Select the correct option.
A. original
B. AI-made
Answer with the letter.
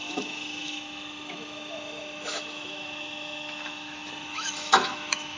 B